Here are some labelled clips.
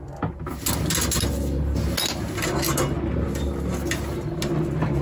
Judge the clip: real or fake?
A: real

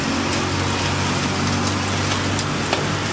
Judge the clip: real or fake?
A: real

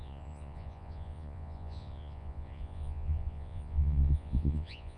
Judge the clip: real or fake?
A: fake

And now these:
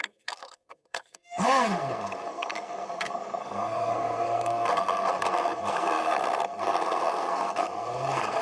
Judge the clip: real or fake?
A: fake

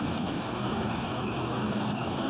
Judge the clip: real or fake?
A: fake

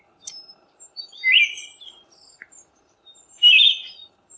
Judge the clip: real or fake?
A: fake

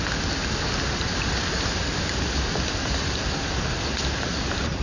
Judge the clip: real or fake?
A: real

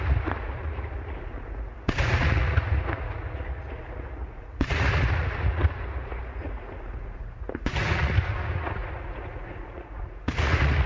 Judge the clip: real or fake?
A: fake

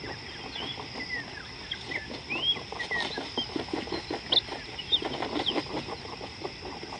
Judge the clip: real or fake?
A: real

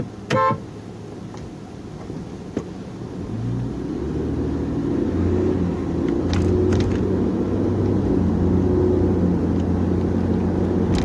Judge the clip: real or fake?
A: real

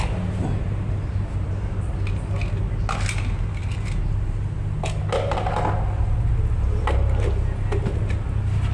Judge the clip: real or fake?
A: real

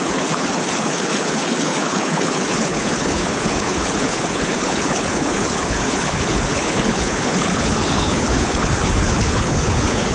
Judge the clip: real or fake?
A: fake